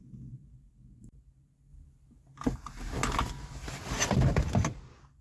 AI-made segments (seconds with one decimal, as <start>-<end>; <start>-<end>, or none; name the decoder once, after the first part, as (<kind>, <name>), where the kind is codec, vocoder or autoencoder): none